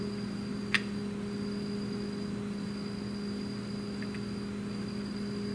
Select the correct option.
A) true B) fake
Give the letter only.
A